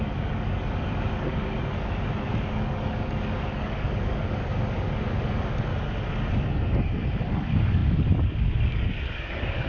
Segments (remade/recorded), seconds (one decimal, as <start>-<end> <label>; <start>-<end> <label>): 0.0-5.7 remade; 5.7-7.3 recorded; 7.3-9.7 remade